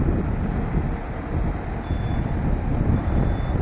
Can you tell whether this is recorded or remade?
recorded